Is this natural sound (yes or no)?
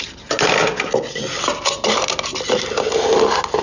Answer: yes